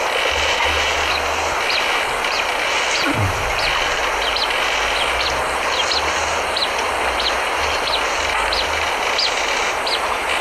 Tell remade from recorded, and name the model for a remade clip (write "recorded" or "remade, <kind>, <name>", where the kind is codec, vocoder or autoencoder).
recorded